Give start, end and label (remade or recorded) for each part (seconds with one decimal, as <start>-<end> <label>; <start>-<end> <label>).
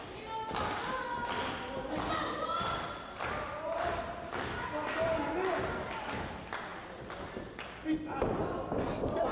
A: 0.0-9.3 recorded